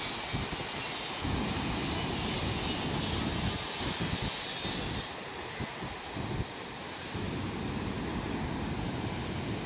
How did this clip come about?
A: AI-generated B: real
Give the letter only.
B